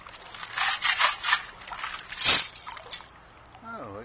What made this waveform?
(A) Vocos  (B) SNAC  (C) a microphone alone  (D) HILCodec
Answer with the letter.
C